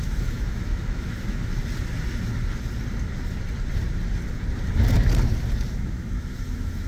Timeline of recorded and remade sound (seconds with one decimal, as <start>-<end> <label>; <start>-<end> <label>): 0.0-1.6 remade; 1.6-5.7 recorded; 5.7-6.9 remade